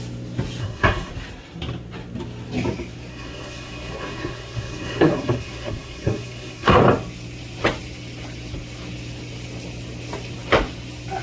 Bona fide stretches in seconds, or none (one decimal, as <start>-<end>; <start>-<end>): 0.0-0.6; 1.1-3.1; 6.8-11.2